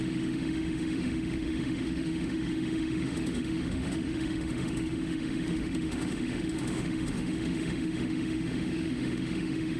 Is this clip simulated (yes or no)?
yes